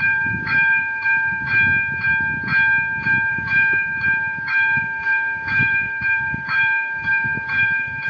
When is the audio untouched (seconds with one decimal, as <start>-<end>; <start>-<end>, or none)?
1.5-3.3